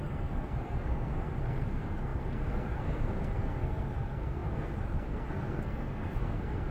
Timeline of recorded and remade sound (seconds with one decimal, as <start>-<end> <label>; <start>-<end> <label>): 0.0-6.7 remade